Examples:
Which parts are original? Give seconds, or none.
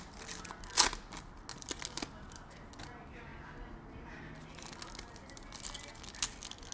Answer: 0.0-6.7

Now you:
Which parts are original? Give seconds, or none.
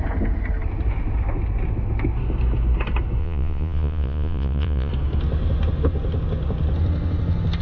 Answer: 0.0-3.2; 4.9-7.6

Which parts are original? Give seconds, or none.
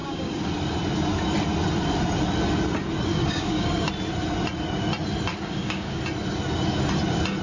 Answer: 0.5-3.1; 3.9-5.3; 6.0-7.4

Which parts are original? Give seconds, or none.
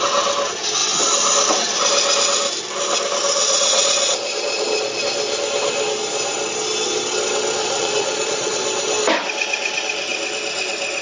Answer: 0.0-3.4; 5.0-7.6; 8.6-11.0